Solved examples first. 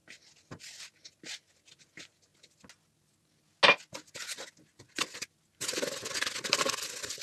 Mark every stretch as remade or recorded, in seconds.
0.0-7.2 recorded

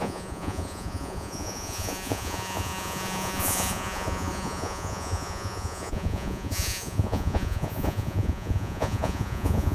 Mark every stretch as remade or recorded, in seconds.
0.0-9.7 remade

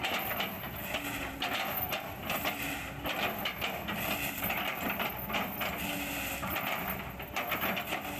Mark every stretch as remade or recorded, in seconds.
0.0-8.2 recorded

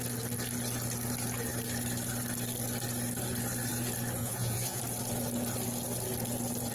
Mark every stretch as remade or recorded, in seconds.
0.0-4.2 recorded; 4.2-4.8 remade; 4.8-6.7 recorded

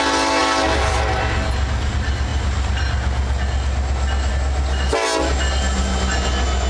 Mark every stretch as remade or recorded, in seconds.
0.0-6.7 recorded

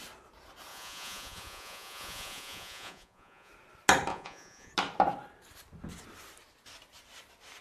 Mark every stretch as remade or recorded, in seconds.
0.0-0.7 recorded; 0.7-3.5 remade; 3.5-4.1 recorded; 4.1-4.7 remade; 4.7-7.6 recorded